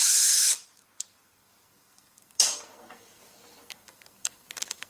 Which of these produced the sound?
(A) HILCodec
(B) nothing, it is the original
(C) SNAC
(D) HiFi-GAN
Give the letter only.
C